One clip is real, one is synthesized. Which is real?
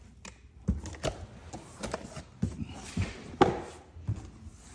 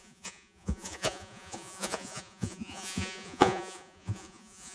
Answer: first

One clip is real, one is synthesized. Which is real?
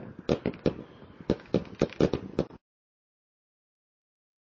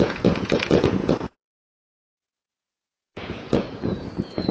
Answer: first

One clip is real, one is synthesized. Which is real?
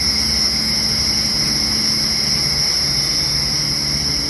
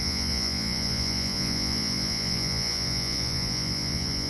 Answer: first